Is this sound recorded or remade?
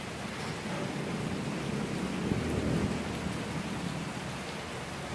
recorded